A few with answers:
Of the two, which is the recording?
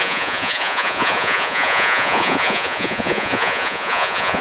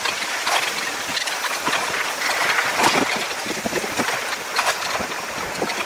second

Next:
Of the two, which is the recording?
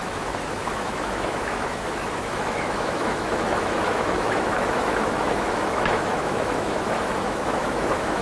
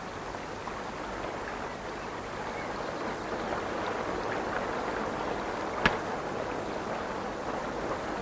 second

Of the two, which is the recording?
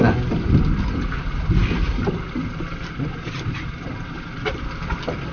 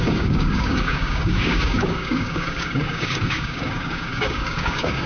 first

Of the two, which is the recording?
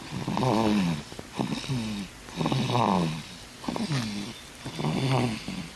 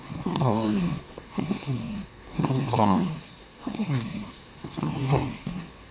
first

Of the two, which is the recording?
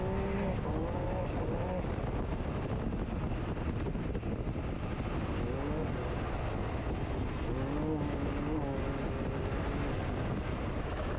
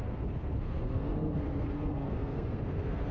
first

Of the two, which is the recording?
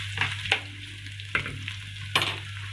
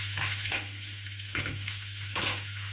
first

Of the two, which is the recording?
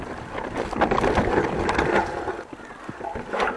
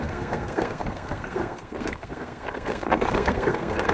first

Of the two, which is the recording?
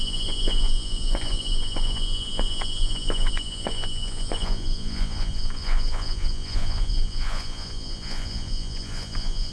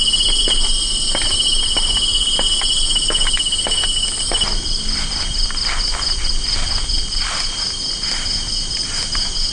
second